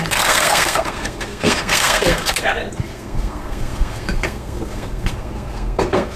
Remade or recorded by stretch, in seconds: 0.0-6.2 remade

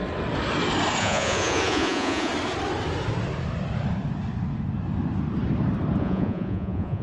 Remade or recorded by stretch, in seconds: 0.0-1.0 recorded; 1.0-2.3 remade; 2.3-6.0 recorded; 6.0-7.0 remade

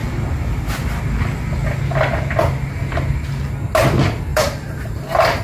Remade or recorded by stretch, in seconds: 0.0-4.3 recorded; 4.3-4.9 remade; 4.9-5.4 recorded

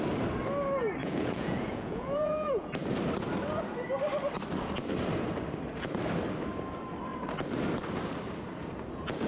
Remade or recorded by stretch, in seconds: 0.0-1.0 recorded; 1.0-2.7 remade; 2.7-9.3 recorded